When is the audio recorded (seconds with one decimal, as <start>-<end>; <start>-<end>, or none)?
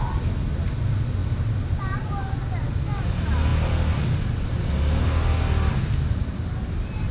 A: 0.0-7.1